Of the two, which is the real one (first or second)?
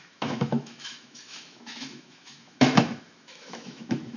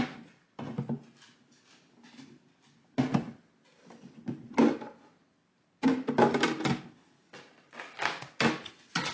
second